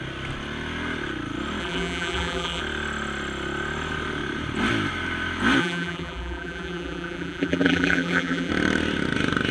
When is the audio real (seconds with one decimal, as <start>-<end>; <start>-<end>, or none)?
0.0-1.6; 2.6-5.6; 8.5-9.5